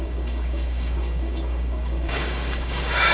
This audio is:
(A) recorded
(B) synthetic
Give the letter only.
B